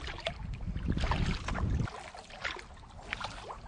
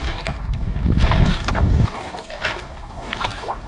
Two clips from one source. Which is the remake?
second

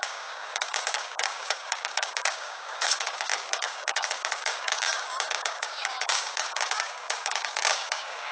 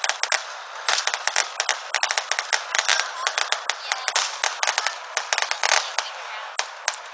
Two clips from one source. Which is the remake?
first